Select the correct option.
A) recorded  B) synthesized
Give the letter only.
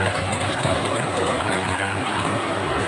B